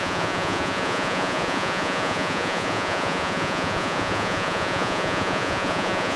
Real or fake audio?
fake